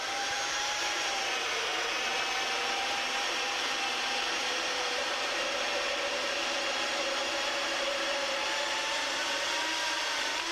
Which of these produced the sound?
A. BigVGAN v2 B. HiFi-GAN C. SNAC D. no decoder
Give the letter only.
A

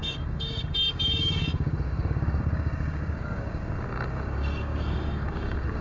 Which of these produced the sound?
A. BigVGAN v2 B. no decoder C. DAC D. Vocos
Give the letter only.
C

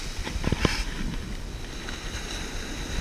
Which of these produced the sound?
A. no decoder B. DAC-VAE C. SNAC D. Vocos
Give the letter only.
A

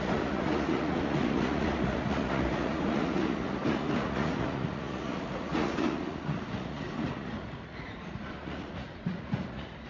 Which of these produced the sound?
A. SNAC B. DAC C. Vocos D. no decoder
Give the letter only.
C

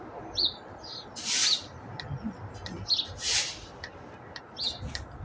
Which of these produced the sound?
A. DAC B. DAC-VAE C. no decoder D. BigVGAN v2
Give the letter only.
C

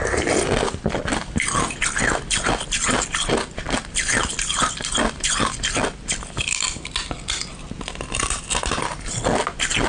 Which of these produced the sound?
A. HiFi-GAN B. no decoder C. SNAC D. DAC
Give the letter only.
B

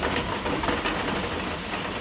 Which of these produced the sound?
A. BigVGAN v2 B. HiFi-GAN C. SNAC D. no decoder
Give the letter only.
D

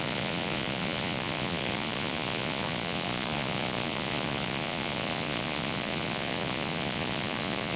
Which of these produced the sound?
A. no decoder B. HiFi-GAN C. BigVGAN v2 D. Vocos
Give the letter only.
D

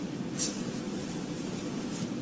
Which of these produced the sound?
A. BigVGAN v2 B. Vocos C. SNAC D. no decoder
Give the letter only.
D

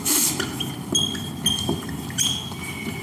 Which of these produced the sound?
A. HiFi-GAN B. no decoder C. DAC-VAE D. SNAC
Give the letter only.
B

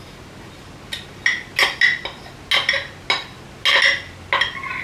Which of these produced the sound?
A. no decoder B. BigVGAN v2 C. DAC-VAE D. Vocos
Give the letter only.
A